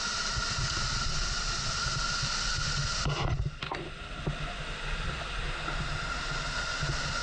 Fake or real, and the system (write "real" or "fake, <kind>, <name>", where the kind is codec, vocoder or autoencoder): real